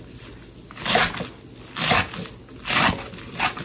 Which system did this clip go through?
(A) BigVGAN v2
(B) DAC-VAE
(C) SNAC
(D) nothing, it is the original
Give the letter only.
D